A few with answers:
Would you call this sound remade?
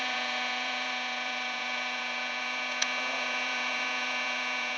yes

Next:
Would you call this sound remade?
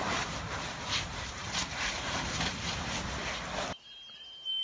no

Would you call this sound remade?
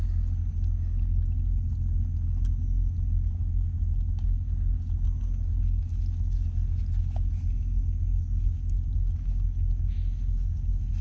no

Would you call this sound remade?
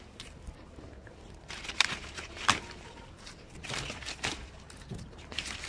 yes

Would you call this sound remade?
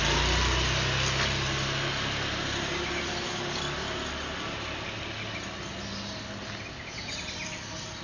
no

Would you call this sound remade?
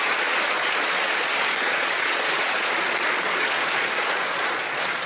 yes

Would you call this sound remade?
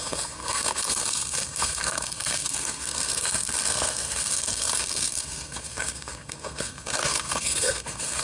yes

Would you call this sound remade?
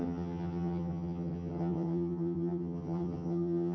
yes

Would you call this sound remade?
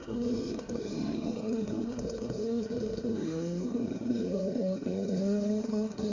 yes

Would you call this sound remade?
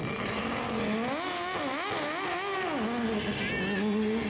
no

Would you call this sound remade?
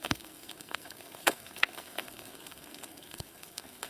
yes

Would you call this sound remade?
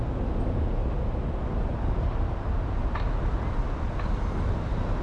no